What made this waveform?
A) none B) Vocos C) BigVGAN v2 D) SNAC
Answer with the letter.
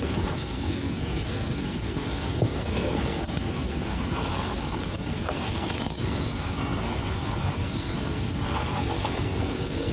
D